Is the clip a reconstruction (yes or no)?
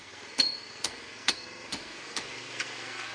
yes